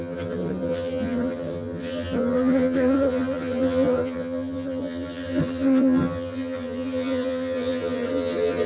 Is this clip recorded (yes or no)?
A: no